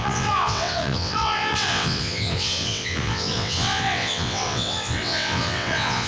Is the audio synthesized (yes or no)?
yes